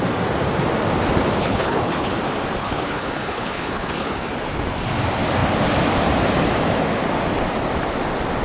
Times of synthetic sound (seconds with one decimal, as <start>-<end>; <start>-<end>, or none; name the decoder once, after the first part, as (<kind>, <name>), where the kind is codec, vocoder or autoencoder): 1.4-2.1 (codec, HILCodec); 2.6-4.2